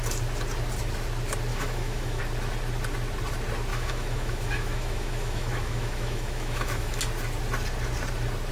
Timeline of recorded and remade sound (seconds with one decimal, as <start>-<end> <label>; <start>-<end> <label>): 0.0-1.5 recorded; 1.5-2.2 remade; 2.2-3.7 recorded; 3.7-7.0 remade; 7.0-8.5 recorded